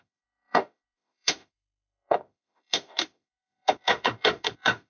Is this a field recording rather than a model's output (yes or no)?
no